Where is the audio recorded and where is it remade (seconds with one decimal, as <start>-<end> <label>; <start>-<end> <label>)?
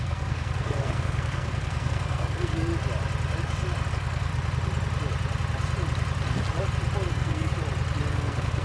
0.0-2.7 remade; 2.7-3.9 recorded; 3.9-4.3 remade; 4.3-7.1 recorded; 7.1-7.5 remade; 7.5-8.1 recorded; 8.1-8.6 remade